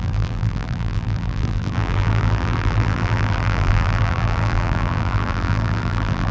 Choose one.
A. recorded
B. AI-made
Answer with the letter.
B